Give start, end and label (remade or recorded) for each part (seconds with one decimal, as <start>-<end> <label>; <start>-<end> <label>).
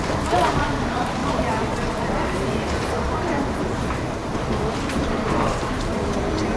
0.0-1.2 recorded; 1.2-3.6 remade; 3.6-4.2 recorded; 4.2-5.5 remade; 5.5-6.6 recorded